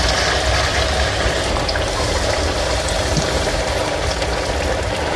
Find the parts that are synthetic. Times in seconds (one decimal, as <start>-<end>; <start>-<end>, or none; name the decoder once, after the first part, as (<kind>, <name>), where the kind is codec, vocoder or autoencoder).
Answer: 0.7-3.8 (vocoder, BigVGAN v2)

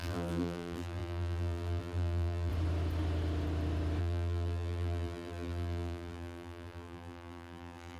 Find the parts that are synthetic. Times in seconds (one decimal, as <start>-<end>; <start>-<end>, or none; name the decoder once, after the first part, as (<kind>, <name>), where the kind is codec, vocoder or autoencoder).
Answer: 0.0-2.5 (vocoder, BigVGAN v2); 4.0-8.0

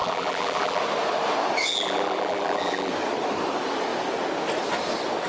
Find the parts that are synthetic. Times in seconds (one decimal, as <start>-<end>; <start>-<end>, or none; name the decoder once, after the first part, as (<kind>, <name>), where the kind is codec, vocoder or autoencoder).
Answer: 0.0-0.8 (vocoder, BigVGAN v2); 1.7-2.9

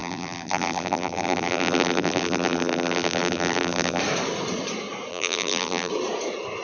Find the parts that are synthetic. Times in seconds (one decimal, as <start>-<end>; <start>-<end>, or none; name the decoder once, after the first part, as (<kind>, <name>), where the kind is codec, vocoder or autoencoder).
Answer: 0.0-4.0 (vocoder, BigVGAN v2); 5.1-5.9